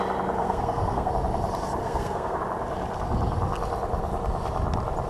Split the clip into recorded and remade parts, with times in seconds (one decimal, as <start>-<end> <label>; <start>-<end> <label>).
0.0-0.4 recorded; 0.4-1.1 remade; 1.1-1.8 recorded; 1.8-2.4 remade; 2.4-5.1 recorded